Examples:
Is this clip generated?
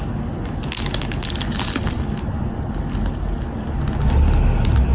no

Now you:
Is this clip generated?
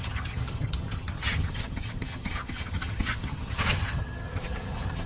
yes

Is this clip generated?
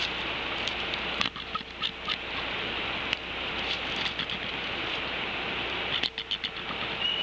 no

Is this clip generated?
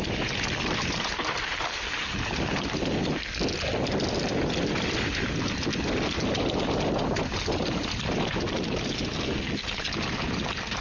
no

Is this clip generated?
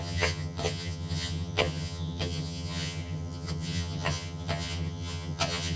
yes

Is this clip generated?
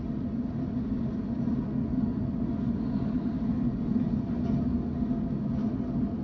no